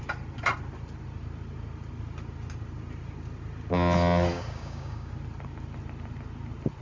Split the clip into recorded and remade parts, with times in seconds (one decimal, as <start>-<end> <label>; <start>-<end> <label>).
0.0-4.3 recorded; 4.3-5.1 remade; 5.1-6.8 recorded

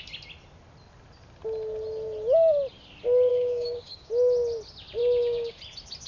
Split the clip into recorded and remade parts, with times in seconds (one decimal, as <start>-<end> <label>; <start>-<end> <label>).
0.0-3.3 recorded; 3.3-4.1 remade; 4.1-5.0 recorded; 5.0-5.6 remade; 5.6-6.1 recorded

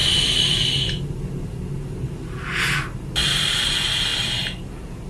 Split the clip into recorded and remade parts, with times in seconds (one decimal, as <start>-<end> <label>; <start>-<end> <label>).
0.0-5.1 recorded

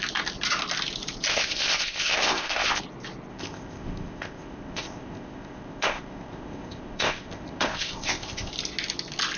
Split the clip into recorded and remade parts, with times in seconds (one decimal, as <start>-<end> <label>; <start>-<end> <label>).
0.0-1.3 recorded; 1.3-2.8 remade; 2.8-3.3 recorded; 3.3-8.5 remade; 8.5-9.4 recorded

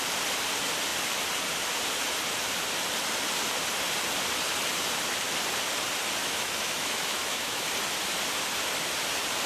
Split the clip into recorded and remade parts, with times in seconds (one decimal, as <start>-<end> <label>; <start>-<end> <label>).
0.0-6.2 recorded; 6.2-7.6 remade; 7.6-9.5 recorded

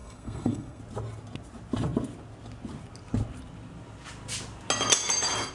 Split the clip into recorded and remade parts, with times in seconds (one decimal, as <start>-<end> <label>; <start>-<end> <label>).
0.0-0.8 remade; 0.8-5.5 recorded